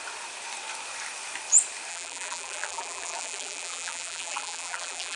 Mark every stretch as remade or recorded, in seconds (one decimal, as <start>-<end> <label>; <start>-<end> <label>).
0.0-1.9 recorded; 1.9-5.2 remade

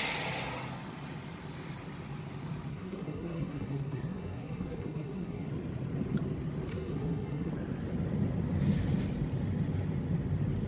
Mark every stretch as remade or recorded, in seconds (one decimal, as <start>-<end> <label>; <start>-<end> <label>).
0.0-2.7 recorded; 2.7-5.5 remade; 5.5-6.7 recorded; 6.7-7.5 remade; 7.5-10.7 recorded

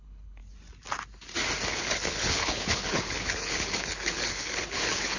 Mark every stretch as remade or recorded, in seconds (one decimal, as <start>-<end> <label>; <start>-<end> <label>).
0.0-0.4 remade; 0.4-1.7 recorded; 1.7-5.2 remade

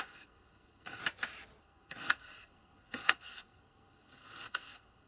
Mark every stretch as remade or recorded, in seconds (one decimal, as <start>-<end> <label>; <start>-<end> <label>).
0.0-1.0 remade; 1.0-1.6 recorded; 1.6-5.1 remade

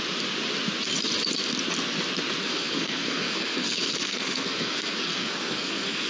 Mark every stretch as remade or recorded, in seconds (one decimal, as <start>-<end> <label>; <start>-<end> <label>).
0.0-2.4 recorded; 2.4-6.1 remade

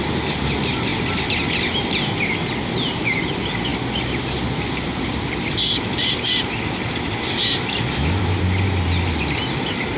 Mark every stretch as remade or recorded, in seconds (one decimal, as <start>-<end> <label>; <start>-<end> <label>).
0.0-10.0 recorded

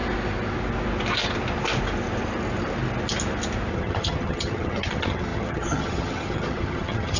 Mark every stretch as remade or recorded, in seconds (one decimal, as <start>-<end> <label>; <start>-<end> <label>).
0.0-3.7 recorded; 3.7-7.2 remade